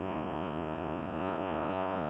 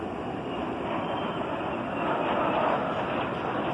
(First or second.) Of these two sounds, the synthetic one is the first